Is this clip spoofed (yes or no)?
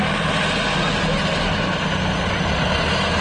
no